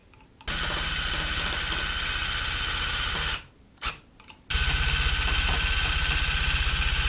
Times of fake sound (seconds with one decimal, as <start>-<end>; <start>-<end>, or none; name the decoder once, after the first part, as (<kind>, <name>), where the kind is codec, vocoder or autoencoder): none